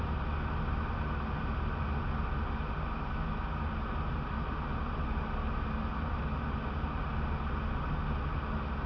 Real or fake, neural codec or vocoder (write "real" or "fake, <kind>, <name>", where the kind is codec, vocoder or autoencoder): real